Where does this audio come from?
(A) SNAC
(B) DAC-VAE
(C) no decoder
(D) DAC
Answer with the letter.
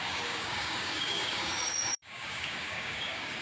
D